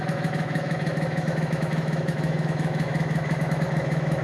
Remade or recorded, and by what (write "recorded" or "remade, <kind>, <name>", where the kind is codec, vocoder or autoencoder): remade, autoencoder, DAC-VAE